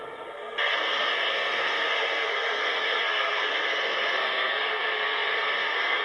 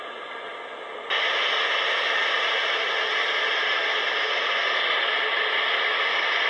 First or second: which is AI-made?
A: first